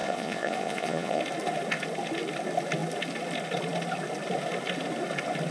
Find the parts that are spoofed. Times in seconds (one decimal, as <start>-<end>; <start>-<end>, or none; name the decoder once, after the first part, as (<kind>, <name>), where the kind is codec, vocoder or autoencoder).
0.0-1.2 (vocoder, Vocos)

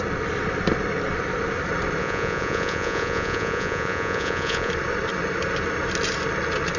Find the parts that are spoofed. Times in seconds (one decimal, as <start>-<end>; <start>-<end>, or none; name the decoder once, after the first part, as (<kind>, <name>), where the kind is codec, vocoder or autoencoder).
2.0-4.7 (vocoder, Vocos)